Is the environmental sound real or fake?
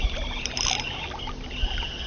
real